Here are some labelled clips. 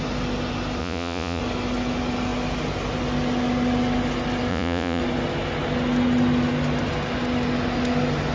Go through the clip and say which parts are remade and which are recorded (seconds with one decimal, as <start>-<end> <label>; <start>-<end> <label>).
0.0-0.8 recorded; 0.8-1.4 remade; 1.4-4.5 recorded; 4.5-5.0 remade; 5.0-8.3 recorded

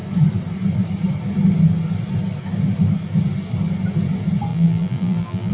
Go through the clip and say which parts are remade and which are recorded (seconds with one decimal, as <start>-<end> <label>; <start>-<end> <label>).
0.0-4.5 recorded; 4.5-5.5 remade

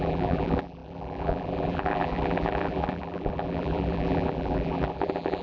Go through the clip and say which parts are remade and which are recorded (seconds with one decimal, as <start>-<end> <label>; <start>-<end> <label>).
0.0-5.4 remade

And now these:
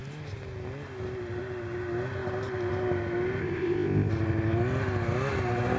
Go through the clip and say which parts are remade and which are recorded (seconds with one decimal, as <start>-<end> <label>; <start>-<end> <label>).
0.0-3.4 recorded; 3.4-4.1 remade; 4.1-5.8 recorded

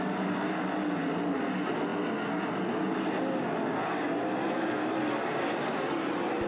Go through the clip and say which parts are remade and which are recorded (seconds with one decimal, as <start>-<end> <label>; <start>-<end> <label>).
0.0-6.5 recorded

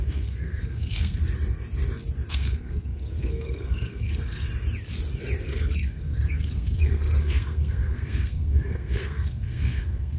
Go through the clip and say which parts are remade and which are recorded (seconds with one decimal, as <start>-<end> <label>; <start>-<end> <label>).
0.0-1.2 remade; 1.2-2.3 recorded; 2.3-4.5 remade; 4.5-5.4 recorded; 5.4-10.2 remade

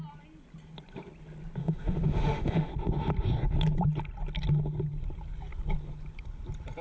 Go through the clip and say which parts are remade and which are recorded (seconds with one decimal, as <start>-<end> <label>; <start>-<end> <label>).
0.0-1.6 recorded; 1.6-2.7 remade; 2.7-6.8 recorded

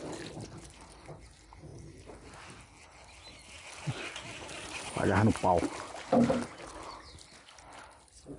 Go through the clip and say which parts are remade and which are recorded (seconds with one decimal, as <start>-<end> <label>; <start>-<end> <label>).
0.0-8.4 recorded